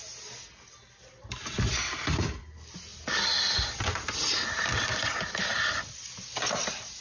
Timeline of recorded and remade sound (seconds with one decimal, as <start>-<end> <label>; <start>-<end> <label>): 0.0-7.0 recorded